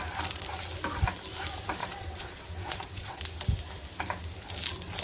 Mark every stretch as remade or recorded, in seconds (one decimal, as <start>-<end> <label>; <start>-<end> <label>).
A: 0.0-1.8 recorded; 1.8-3.2 remade; 3.2-5.0 recorded